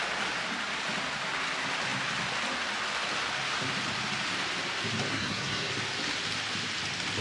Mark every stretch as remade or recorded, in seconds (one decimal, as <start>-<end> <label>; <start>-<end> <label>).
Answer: 0.0-5.1 recorded; 5.1-5.7 remade; 5.7-7.2 recorded